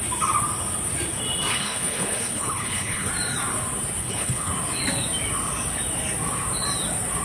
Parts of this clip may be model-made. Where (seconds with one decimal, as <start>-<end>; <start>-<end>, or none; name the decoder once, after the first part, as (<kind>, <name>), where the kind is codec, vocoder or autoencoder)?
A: 1.5-3.1 (codec, HILCodec); 4.0-4.5